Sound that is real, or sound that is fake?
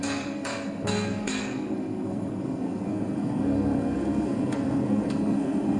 fake